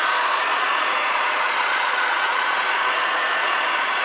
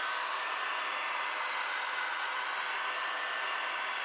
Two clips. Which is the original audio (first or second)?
second